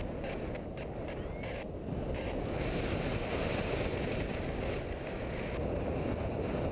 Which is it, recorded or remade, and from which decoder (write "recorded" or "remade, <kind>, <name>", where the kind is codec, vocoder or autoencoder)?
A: recorded